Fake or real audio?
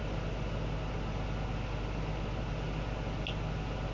real